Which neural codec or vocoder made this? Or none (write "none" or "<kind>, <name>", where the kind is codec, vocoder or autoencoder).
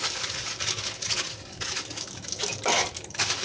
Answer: codec, DAC